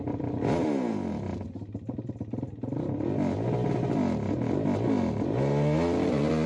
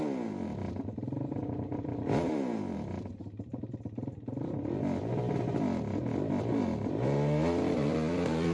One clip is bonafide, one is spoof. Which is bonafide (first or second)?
first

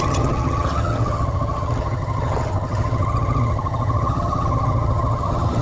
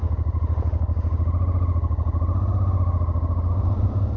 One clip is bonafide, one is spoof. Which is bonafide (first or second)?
second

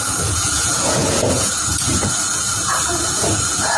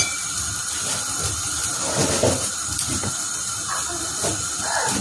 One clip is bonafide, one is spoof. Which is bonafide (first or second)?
second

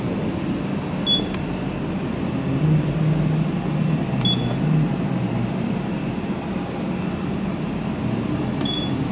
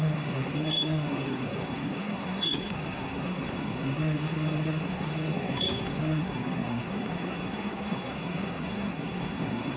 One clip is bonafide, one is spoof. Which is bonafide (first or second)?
first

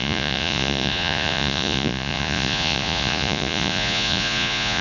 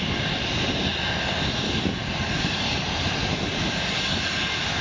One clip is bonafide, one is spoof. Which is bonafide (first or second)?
second